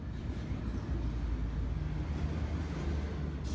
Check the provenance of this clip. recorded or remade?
recorded